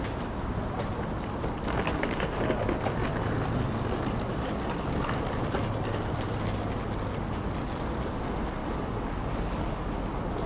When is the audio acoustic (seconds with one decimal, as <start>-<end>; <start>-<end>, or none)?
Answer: 0.0-8.6; 9.7-10.5

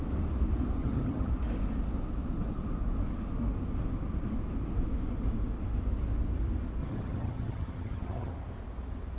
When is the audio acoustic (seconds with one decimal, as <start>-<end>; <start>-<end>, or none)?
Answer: 0.0-0.8; 1.3-6.8; 8.3-9.2

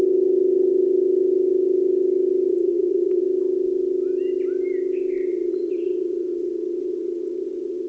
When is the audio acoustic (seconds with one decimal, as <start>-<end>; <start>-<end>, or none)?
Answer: 0.0-2.5; 3.2-5.3